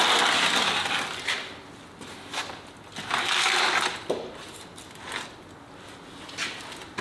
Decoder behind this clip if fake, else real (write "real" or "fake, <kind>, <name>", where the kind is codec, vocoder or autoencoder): real